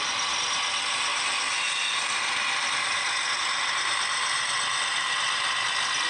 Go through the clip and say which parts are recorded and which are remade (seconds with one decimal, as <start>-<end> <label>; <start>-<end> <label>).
0.0-6.1 recorded

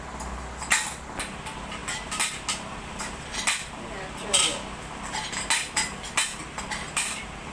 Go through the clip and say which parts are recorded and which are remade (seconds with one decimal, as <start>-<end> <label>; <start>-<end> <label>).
0.0-7.5 recorded

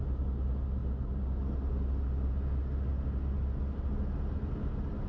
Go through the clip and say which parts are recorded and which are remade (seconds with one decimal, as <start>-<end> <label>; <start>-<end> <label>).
0.0-5.1 recorded

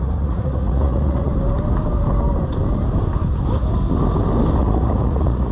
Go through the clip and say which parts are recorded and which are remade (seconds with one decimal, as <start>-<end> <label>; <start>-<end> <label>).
0.0-1.3 remade; 1.3-4.6 recorded; 4.6-5.5 remade